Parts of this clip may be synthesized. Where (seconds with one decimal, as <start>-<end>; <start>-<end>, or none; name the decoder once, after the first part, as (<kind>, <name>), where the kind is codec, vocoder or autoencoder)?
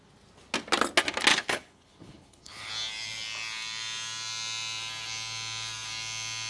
1.3-2.7 (codec, HILCodec)